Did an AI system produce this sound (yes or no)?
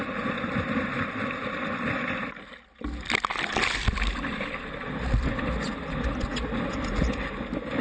no